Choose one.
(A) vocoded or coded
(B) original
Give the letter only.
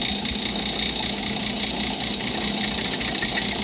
B